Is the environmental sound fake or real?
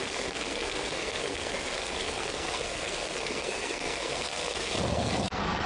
fake